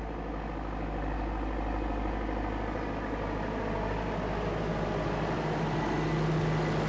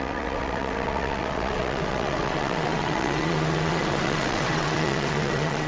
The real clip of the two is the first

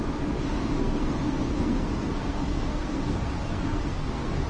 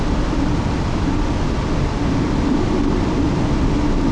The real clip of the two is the second